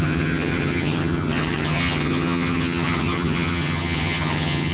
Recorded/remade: remade